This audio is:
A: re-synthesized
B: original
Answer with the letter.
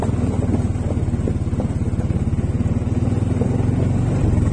B